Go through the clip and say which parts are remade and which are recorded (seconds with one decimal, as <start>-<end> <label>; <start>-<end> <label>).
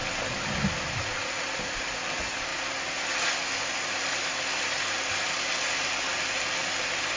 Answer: 0.0-7.2 recorded